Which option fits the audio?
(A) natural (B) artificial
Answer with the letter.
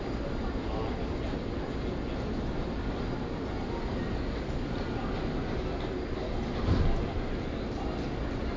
A